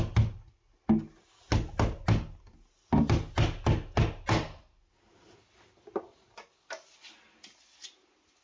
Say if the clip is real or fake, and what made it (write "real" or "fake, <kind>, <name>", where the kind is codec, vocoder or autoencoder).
real